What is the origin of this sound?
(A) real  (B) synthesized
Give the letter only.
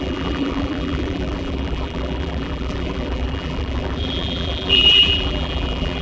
B